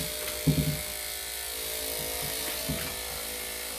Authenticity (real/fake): real